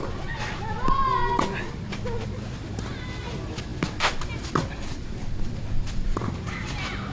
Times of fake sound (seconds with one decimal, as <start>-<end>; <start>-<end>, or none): none